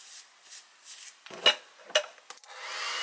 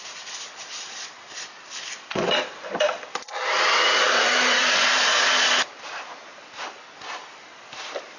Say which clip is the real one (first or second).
first